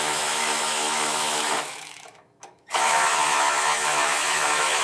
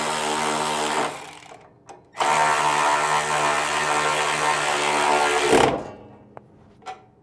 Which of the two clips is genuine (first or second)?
second